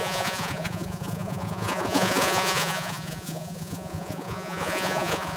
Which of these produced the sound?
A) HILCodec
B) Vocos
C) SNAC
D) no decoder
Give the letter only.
B